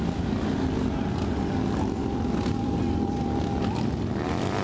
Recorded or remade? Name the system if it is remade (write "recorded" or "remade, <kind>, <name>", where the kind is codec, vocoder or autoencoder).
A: recorded